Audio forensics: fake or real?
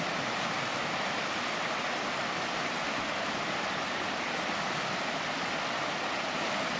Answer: real